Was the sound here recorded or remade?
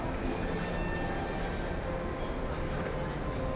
recorded